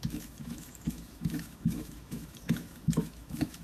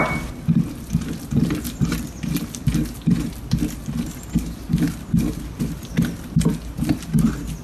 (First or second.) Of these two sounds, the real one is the second